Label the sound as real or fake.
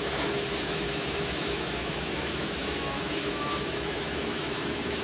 fake